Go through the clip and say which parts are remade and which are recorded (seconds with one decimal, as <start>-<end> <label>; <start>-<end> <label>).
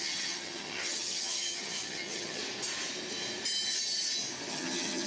0.0-2.4 remade; 2.4-4.5 recorded; 4.5-5.1 remade